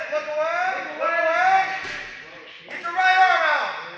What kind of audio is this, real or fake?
real